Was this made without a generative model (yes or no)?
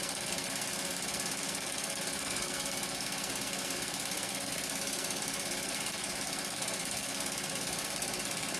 no